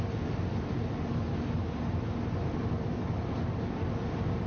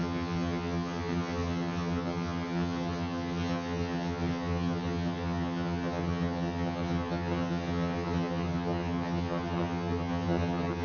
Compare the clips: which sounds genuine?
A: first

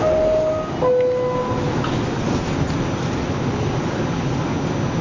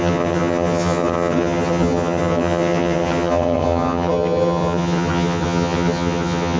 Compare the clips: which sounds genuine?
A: first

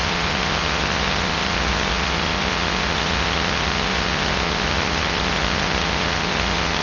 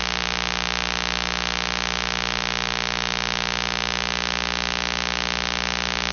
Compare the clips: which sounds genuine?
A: second